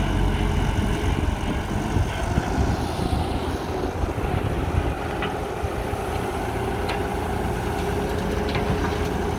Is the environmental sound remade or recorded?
recorded